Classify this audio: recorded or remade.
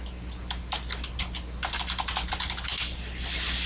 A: recorded